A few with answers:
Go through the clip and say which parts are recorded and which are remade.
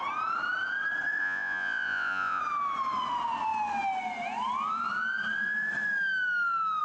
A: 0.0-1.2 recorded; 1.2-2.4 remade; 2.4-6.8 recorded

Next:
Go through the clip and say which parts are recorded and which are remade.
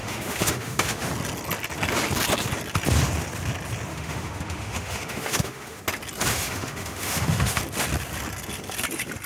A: 0.0-1.1 remade; 1.1-3.9 recorded; 3.9-5.8 remade; 5.8-6.3 recorded; 6.3-7.6 remade; 7.6-9.3 recorded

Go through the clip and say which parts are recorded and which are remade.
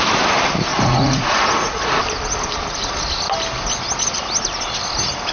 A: 0.0-0.7 recorded; 0.7-2.0 remade; 2.0-5.3 recorded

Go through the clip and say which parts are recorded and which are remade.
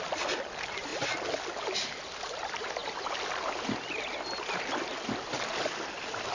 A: 0.0-6.3 recorded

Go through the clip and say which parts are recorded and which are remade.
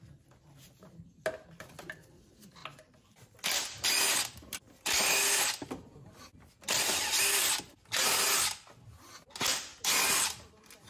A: 0.0-10.9 recorded